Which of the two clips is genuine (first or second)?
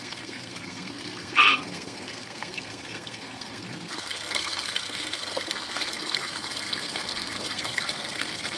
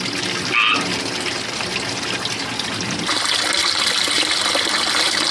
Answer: second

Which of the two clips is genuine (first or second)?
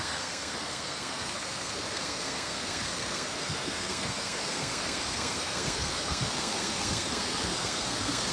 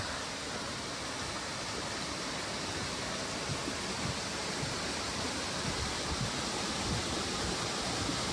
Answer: second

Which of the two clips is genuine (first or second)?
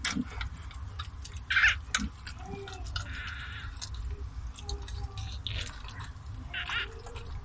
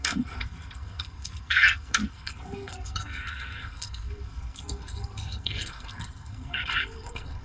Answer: first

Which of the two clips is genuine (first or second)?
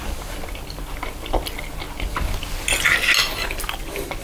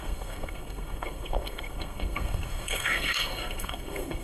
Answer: first